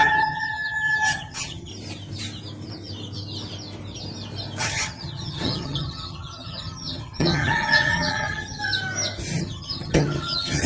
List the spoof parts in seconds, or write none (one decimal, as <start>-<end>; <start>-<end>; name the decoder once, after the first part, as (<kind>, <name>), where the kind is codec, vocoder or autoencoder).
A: 0.0-1.7 (vocoder, HiFi-GAN); 4.6-8.6; 9.4-10.7